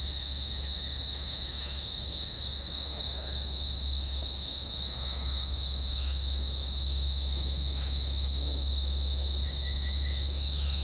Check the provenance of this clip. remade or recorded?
remade